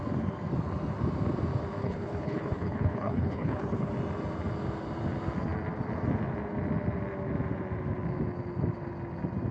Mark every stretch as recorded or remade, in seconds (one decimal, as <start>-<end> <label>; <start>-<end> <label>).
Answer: 0.0-1.8 recorded; 1.8-3.9 remade; 3.9-9.5 recorded